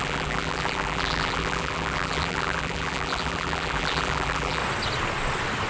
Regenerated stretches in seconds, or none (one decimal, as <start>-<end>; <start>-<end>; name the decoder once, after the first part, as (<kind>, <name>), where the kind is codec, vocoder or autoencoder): 0.0-4.6 (vocoder, BigVGAN v2)